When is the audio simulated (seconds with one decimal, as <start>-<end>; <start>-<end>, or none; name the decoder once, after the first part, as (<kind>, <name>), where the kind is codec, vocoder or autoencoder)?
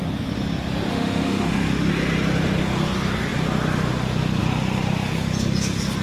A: 0.9-1.9 (autoencoder, DAC-VAE)